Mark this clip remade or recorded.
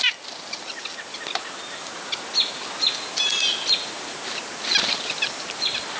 recorded